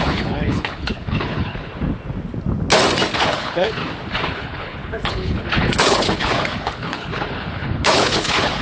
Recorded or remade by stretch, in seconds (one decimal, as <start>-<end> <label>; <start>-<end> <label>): 0.0-1.7 remade; 1.7-3.2 recorded; 3.2-3.8 remade; 3.8-4.3 recorded; 4.3-8.6 remade